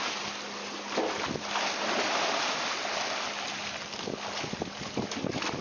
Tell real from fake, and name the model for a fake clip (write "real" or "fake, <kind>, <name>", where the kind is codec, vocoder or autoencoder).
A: real